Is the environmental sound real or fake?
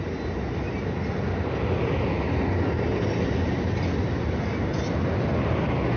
real